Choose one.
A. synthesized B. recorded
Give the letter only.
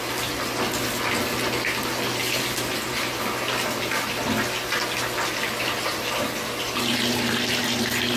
B